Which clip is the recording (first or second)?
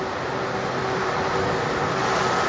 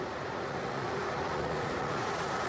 first